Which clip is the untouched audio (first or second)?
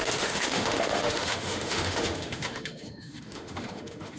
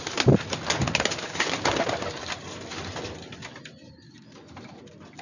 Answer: second